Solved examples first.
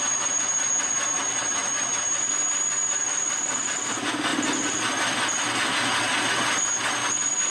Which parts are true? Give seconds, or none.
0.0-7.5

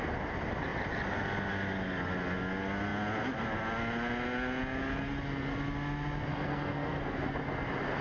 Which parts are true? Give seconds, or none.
0.0-6.3; 7.3-8.0